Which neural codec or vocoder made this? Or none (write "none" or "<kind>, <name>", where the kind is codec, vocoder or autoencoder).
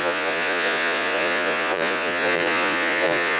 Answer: vocoder, Vocos